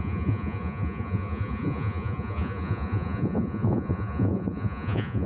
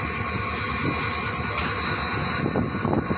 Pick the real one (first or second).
second